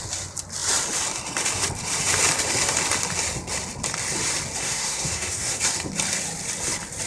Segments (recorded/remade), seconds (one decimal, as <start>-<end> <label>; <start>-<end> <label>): 0.0-4.6 recorded; 4.6-5.6 remade; 5.6-7.1 recorded